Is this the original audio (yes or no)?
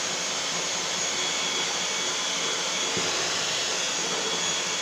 yes